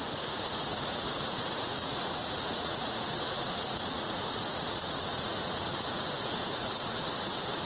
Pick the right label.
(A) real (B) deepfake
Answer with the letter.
B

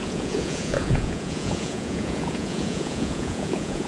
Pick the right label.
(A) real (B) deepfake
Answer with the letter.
B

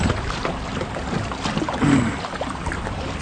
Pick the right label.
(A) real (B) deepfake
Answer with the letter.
A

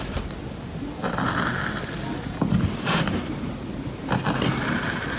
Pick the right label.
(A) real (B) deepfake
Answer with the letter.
A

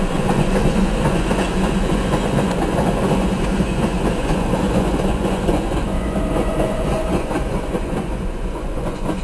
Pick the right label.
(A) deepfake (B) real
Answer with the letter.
A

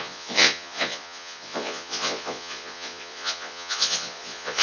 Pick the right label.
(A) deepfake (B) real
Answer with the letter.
A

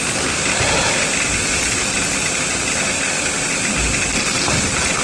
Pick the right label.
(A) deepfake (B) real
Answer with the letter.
B